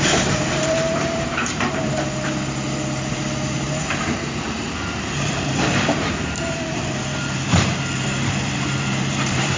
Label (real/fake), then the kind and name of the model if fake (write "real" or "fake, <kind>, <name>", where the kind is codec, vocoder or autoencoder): fake, vocoder, BigVGAN v2